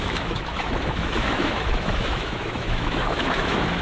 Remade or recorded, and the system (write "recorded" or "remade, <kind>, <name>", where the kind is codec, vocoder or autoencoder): remade, autoencoder, DAC-VAE